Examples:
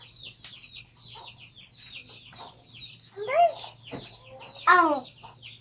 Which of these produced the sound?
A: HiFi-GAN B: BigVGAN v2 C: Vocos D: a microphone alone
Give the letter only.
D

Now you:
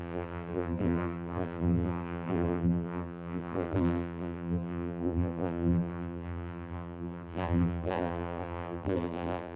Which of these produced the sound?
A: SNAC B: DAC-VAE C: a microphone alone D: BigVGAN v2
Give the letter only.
D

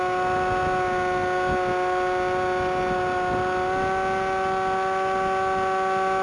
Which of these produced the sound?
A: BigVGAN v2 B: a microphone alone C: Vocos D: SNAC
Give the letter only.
B